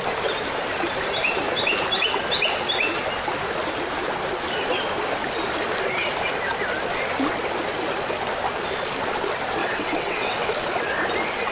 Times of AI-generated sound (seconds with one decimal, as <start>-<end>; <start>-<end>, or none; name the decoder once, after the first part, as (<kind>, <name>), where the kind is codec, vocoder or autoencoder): 9.6-10.5 (vocoder, WaveNeXt)